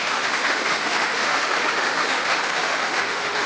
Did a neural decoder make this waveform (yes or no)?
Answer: yes